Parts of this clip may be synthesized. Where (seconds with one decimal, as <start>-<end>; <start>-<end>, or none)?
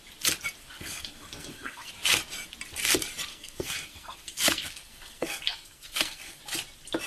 0.6-1.9; 3.3-6.4